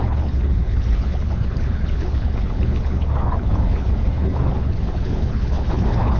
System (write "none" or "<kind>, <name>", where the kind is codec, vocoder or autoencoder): codec, HILCodec